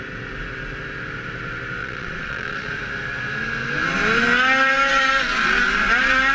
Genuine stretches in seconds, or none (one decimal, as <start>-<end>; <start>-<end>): 0.0-1.8; 2.7-6.3